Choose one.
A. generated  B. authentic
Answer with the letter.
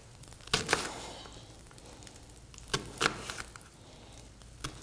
B